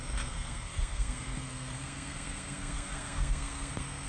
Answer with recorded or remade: remade